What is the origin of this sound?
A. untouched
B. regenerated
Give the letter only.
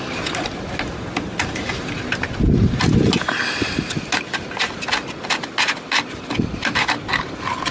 A